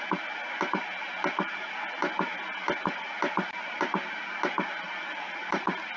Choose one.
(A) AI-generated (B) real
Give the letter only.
B